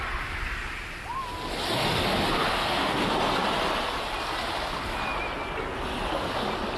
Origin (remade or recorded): recorded